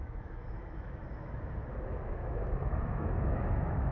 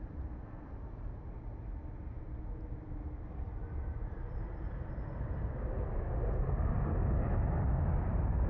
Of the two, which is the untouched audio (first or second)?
second